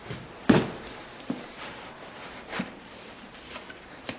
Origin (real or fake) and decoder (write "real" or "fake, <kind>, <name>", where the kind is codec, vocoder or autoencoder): fake, vocoder, BigVGAN v2